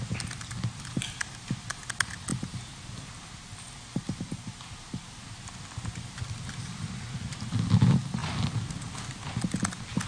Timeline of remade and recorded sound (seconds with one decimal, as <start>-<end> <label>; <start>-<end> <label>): 0.0-10.1 recorded